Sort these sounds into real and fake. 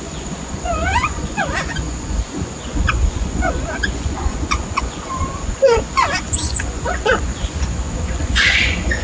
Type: fake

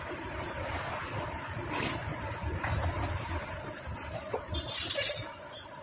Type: real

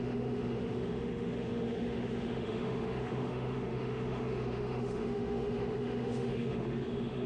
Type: fake